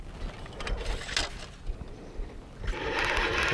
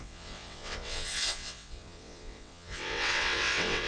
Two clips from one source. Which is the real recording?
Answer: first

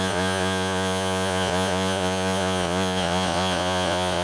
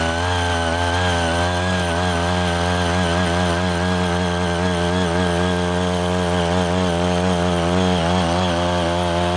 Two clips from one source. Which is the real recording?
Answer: second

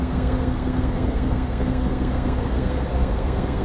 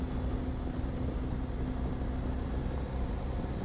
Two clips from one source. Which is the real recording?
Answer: second